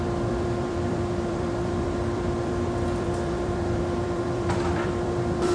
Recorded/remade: remade